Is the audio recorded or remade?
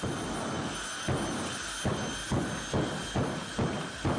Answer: recorded